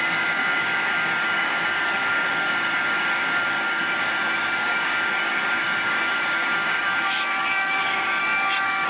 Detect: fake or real fake